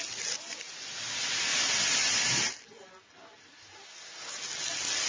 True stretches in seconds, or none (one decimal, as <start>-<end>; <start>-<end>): 0.0-5.1